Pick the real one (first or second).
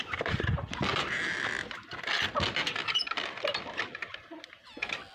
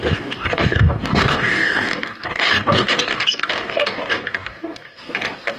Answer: first